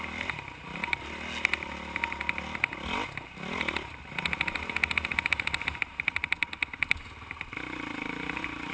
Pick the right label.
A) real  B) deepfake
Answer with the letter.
A